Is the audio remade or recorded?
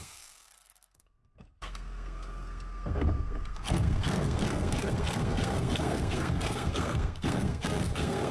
remade